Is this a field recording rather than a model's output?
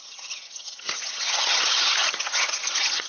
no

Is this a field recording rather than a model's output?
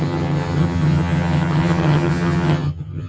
no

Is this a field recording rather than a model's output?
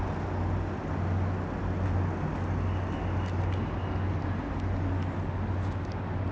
yes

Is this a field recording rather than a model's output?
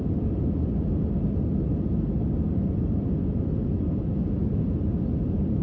yes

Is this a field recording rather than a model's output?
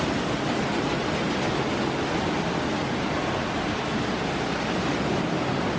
yes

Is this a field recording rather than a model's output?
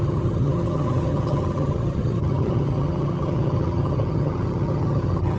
no